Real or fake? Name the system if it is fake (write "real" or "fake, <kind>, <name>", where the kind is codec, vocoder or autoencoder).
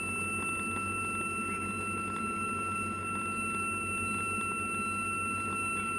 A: real